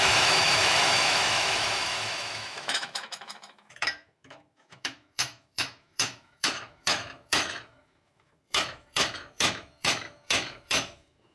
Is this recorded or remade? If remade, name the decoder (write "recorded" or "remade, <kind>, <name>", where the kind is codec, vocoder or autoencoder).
remade, autoencoder, DAC-VAE